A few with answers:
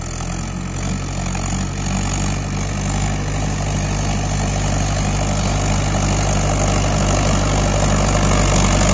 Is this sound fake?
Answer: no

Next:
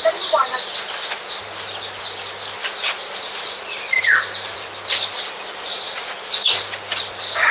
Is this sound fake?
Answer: no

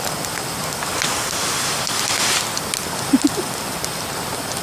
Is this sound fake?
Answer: no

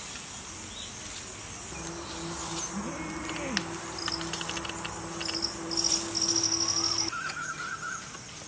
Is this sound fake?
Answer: no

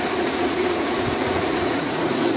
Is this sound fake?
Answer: yes